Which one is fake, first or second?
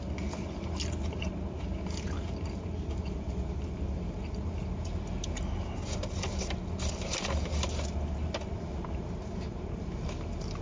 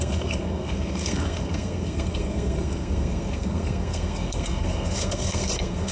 second